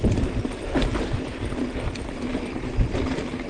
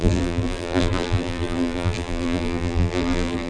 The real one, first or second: first